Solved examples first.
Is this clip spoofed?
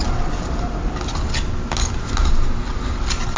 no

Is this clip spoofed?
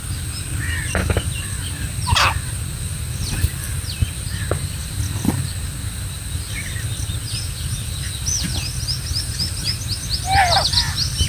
no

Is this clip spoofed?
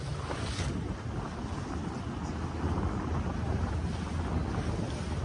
no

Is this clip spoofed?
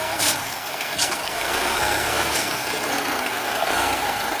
yes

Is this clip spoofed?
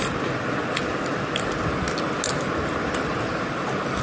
no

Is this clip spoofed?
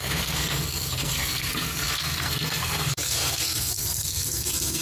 yes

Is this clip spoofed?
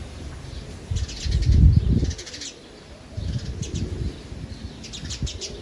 no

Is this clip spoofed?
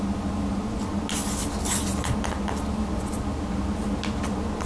no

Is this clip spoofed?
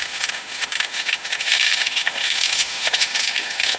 yes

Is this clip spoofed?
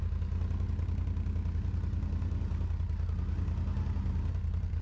no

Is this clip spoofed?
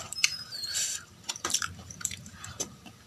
yes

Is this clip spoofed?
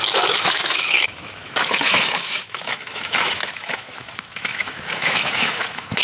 yes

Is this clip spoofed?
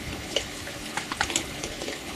yes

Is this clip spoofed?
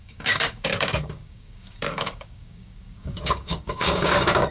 yes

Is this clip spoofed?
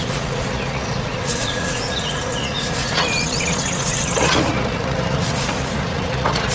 yes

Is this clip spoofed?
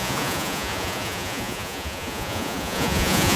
yes